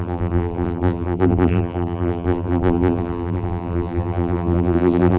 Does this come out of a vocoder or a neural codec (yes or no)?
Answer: yes